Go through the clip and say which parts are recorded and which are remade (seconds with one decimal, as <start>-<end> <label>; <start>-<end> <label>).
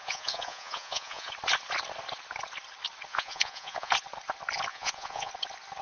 0.0-1.3 remade; 1.3-3.1 recorded; 3.1-3.9 remade; 3.9-4.7 recorded; 4.7-5.3 remade; 5.3-5.8 recorded